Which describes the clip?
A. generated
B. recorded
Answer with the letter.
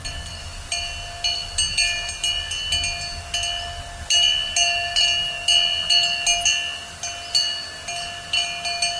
B